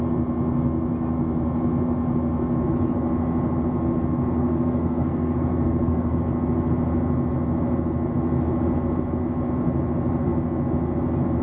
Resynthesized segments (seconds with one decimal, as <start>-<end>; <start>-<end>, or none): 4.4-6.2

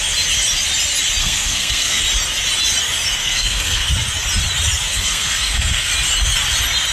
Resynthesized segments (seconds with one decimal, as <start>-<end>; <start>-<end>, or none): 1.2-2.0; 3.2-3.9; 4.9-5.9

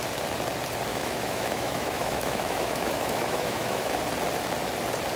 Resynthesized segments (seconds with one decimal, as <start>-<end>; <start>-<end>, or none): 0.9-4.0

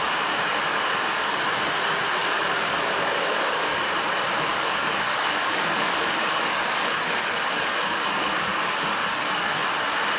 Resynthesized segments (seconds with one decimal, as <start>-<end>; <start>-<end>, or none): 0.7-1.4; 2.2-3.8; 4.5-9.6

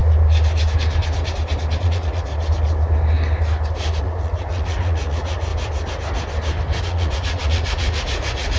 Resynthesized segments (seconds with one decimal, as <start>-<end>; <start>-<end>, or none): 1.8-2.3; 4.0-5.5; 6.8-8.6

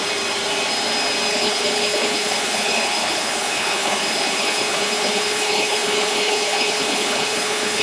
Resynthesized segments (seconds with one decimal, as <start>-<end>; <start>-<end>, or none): 1.3-7.8

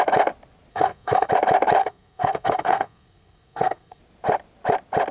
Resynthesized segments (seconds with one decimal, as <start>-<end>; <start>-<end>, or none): 0.7-1.3; 1.8-4.0

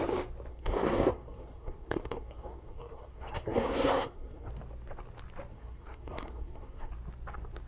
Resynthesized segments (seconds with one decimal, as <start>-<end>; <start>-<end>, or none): 0.5-4.5; 5.5-6.9